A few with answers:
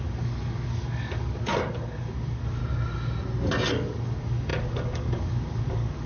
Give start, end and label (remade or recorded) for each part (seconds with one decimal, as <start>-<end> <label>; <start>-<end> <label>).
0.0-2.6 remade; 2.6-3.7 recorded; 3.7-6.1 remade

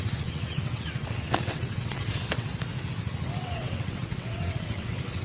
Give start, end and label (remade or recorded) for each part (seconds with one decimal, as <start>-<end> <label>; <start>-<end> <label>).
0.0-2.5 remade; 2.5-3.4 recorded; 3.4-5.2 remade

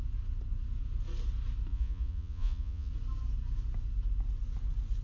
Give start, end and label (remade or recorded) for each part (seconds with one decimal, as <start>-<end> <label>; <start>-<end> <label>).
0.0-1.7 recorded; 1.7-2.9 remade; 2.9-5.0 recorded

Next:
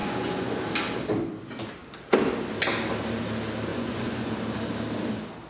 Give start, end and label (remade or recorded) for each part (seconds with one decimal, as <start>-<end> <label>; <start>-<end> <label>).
0.0-0.6 remade; 0.6-3.7 recorded; 3.7-4.3 remade; 4.3-5.5 recorded

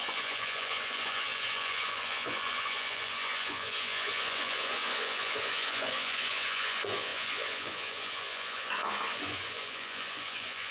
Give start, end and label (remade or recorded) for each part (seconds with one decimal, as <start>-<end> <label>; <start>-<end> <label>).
0.0-10.7 remade